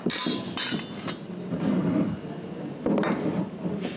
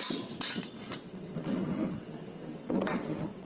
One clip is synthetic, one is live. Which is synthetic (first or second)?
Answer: second